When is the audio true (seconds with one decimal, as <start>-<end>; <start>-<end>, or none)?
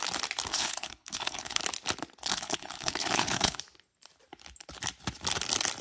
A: 0.0-0.5; 1.6-2.3; 3.6-5.8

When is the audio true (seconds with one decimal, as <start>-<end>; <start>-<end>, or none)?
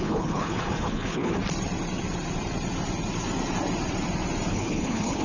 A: 1.4-4.5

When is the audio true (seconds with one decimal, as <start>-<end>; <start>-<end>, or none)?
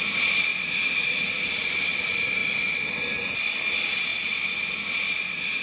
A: 0.0-5.6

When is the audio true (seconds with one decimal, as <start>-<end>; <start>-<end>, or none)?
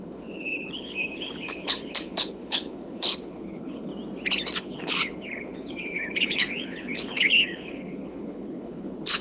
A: 3.9-4.6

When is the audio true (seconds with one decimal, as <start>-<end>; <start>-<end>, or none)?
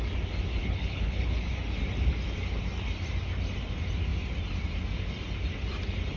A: 0.0-0.6; 1.5-6.2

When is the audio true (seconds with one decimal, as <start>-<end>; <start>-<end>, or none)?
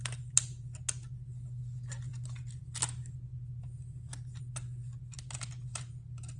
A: 0.0-6.4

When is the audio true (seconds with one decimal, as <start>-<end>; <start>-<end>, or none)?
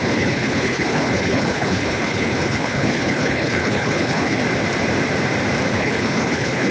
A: 4.4-5.7